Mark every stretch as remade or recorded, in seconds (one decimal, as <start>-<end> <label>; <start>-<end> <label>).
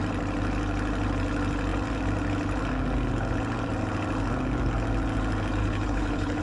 0.0-5.6 recorded; 5.6-6.4 remade